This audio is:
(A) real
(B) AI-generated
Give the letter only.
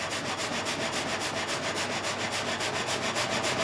A